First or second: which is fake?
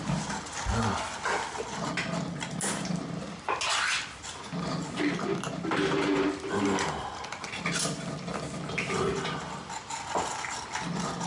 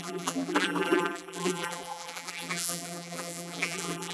second